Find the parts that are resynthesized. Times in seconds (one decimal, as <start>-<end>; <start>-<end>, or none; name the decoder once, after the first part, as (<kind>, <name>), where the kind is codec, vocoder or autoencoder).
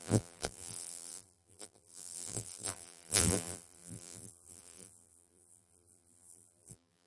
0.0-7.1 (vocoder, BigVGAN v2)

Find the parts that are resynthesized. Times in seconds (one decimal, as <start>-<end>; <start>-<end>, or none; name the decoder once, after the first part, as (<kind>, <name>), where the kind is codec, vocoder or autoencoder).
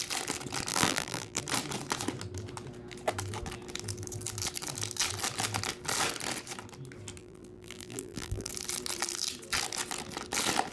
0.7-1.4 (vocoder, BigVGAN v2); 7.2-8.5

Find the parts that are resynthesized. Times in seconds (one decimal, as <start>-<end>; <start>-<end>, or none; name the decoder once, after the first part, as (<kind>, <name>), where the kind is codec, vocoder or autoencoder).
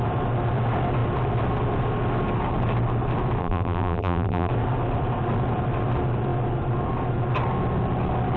3.4-4.5 (vocoder, BigVGAN v2)